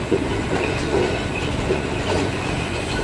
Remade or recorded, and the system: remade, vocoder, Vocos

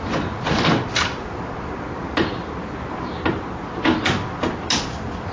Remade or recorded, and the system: recorded